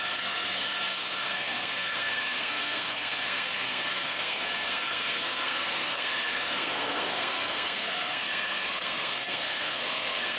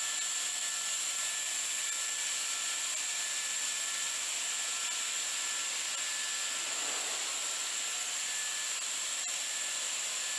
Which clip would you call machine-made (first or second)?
first